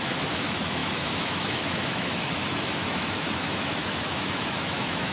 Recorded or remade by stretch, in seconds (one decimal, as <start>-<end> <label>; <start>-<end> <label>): 0.0-5.1 remade